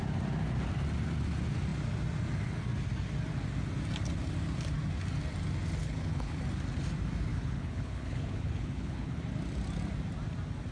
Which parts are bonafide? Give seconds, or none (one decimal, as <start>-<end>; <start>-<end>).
0.0-5.8; 6.4-7.3; 9.2-10.7